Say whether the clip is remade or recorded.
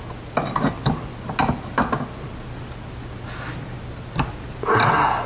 recorded